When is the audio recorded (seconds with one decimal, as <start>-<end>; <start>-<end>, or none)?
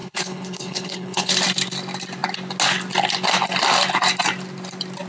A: 1.3-5.1